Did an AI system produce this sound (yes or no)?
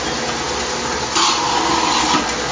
no